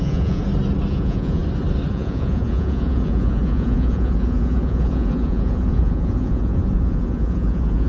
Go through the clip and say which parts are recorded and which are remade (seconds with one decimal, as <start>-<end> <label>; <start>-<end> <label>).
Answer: 0.0-0.4 remade; 0.4-0.9 recorded; 0.9-1.4 remade; 1.4-1.9 recorded; 1.9-7.9 remade